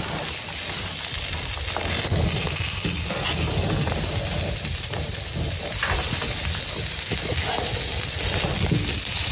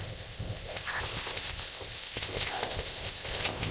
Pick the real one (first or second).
first